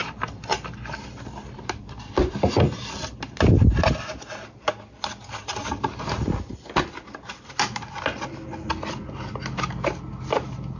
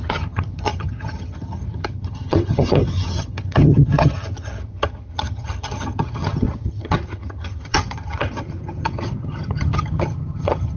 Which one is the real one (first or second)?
first